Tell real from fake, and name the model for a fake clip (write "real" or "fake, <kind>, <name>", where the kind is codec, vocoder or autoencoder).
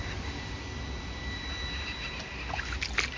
real